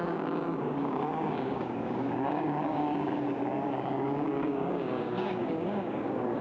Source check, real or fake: fake